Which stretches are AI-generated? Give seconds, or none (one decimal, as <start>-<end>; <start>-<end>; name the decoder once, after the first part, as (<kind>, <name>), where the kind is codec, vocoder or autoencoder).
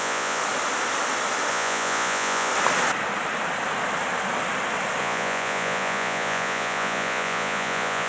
0.0-0.4 (vocoder, Vocos); 1.5-2.5; 5.0-8.1